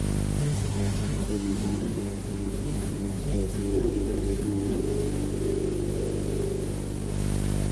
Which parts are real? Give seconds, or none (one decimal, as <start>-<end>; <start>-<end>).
0.0-0.4; 4.8-7.7